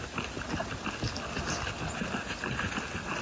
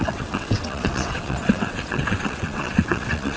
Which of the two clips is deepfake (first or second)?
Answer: second